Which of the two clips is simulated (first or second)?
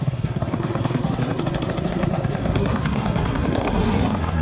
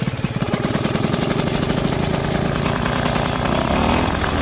first